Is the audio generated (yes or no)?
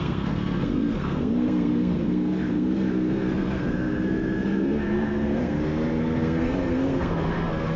yes